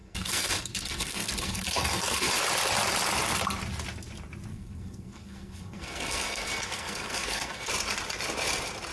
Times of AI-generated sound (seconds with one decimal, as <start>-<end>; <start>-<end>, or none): 0.0-2.3; 4.5-7.7